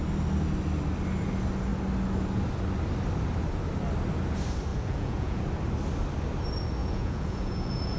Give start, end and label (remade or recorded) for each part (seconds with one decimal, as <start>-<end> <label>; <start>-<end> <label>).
0.0-4.7 recorded; 4.7-5.4 remade; 5.4-6.8 recorded; 6.8-8.0 remade